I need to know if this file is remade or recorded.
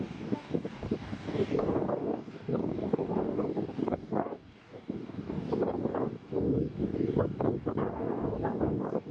remade